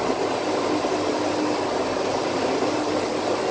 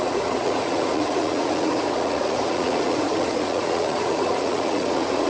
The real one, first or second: first